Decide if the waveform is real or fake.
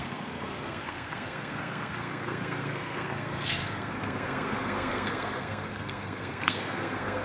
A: fake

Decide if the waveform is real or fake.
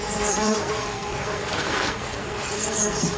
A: fake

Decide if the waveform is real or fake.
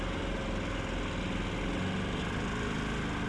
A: real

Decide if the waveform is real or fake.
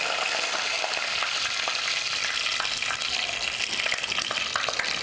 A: real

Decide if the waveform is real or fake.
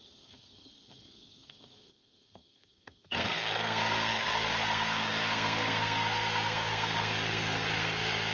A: fake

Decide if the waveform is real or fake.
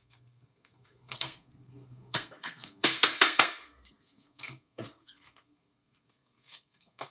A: fake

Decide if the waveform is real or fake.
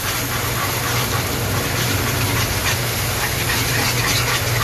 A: real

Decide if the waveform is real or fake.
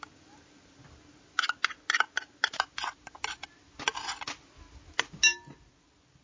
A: real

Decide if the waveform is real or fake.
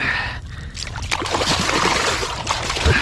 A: real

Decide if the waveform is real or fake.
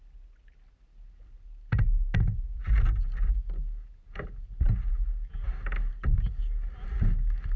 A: real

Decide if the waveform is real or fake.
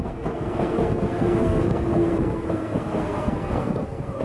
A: fake